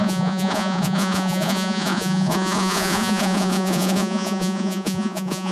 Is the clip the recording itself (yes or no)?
no